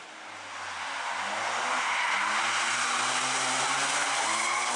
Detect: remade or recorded recorded